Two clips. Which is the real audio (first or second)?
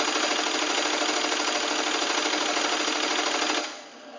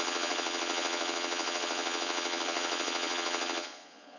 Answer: first